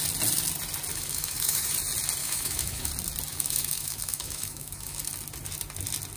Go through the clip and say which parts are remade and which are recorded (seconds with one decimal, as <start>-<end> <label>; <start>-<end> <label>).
0.0-0.9 recorded; 0.9-1.7 remade; 1.7-2.2 recorded; 2.2-2.9 remade; 2.9-3.3 recorded; 3.3-5.0 remade; 5.0-6.2 recorded

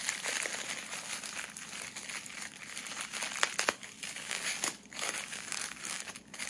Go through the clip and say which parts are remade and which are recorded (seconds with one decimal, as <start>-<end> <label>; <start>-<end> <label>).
0.0-3.7 recorded; 3.7-6.5 remade

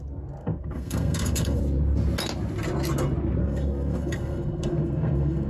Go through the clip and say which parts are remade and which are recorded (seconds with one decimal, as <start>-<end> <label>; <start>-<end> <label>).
0.0-0.4 recorded; 0.4-1.6 remade; 1.6-3.4 recorded; 3.4-5.5 remade

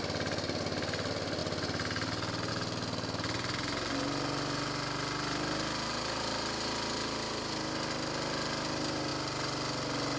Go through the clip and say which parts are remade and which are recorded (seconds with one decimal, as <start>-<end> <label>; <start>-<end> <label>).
0.0-10.2 recorded